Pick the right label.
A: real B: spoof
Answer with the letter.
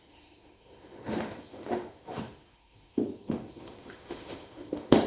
B